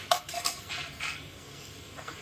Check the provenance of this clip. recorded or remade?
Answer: remade